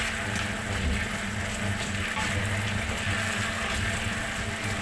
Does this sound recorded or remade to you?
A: recorded